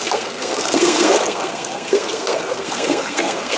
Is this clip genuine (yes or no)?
no